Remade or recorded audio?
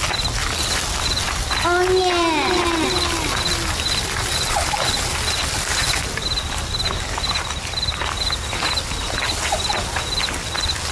recorded